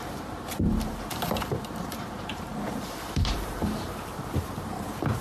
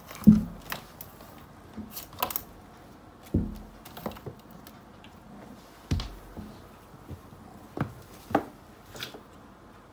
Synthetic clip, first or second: first